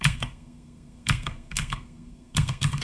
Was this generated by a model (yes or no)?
yes